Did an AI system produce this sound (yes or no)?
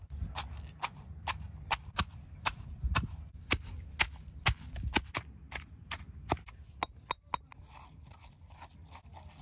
no